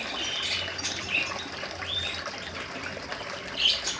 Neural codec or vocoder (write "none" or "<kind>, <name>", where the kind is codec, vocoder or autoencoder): none